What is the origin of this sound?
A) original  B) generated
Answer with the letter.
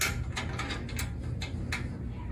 A